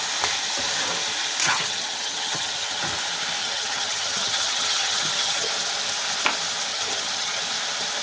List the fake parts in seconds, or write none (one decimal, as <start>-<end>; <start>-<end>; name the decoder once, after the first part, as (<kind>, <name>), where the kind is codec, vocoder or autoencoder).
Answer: 1.4-2.8 (vocoder, HiFi-GAN); 3.4-5.5; 6.7-7.4